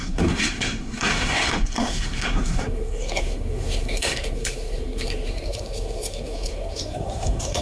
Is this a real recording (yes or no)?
no